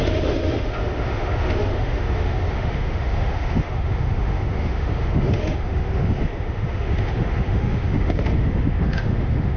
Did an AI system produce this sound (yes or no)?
yes